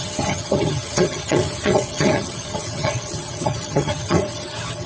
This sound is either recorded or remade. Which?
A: remade